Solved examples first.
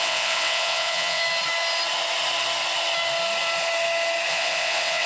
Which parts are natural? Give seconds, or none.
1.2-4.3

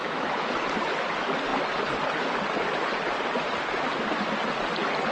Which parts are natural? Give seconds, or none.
0.5-5.1

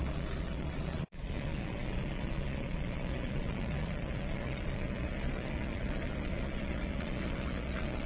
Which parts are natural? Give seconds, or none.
none

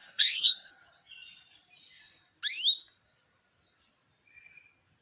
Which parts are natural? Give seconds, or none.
0.7-5.0

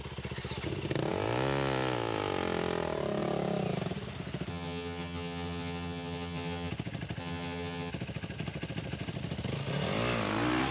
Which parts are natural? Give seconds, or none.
0.0-4.5; 6.7-7.2; 7.9-10.7

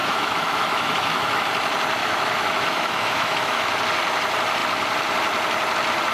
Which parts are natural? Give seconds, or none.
1.5-2.0; 3.7-6.1

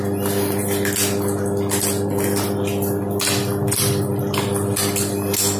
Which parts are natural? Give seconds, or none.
0.0-5.6

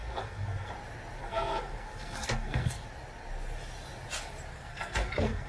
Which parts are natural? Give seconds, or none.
0.7-1.2; 2.8-4.5